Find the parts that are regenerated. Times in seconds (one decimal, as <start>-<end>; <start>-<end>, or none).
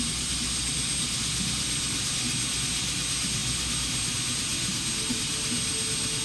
none